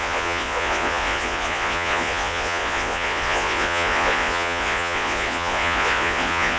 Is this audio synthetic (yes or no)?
yes